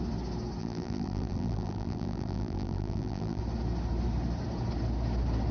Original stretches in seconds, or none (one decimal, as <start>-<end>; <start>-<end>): 0.0-0.6; 3.4-5.5